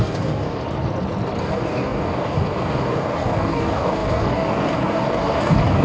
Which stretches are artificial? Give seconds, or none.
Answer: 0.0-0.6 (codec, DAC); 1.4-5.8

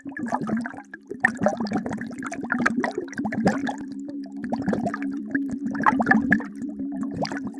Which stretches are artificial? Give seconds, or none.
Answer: 0.0-7.6 (vocoder, BigVGAN v2)

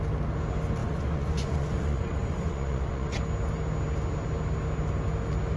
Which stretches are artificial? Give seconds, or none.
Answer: 0.8-3.2 (vocoder, Vocos)